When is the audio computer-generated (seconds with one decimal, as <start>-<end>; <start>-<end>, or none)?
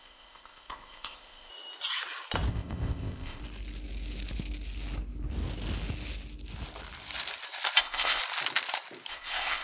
0.0-1.5; 2.5-3.4; 7.8-8.2; 9.1-9.6